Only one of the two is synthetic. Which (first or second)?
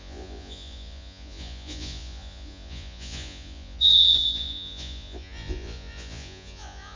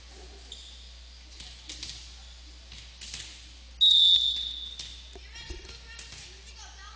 first